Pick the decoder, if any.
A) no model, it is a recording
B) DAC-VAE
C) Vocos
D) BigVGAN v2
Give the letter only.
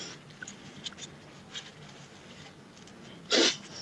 A